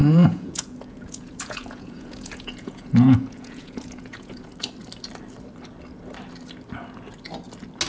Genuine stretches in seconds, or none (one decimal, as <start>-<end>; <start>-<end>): 4.5-7.9